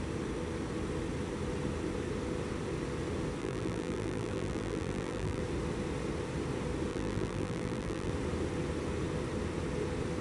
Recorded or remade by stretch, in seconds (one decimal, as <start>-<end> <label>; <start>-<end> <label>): 0.0-3.4 recorded; 3.4-5.4 remade; 5.4-6.9 recorded; 6.9-8.1 remade; 8.1-10.2 recorded